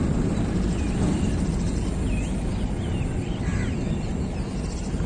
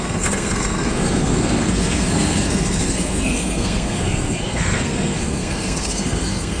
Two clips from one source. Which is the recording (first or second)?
first